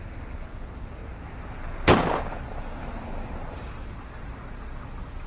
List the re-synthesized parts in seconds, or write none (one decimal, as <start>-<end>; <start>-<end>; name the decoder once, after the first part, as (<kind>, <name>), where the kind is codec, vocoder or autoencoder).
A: none